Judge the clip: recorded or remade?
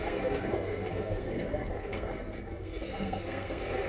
remade